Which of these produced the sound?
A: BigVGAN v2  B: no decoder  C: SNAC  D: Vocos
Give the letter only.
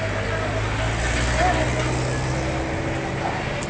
B